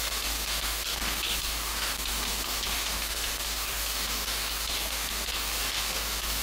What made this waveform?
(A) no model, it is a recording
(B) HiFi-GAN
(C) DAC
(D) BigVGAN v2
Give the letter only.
C